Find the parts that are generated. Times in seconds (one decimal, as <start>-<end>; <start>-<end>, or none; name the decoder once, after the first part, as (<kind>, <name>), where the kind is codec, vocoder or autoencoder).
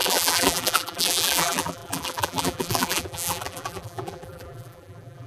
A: 0.0-5.3 (vocoder, BigVGAN v2)